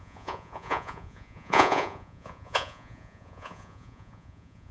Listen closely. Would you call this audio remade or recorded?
remade